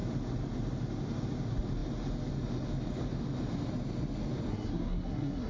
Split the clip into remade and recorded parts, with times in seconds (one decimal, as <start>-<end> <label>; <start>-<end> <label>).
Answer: 0.0-4.5 recorded; 4.5-5.5 remade